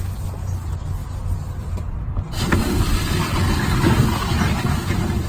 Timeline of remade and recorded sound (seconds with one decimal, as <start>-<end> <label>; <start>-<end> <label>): 0.0-5.3 recorded